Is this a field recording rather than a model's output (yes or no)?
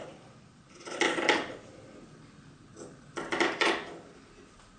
yes